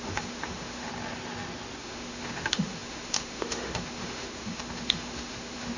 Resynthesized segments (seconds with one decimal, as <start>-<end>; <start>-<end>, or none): 0.0-0.9; 1.8-5.8